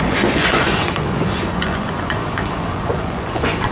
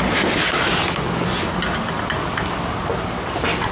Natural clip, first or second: second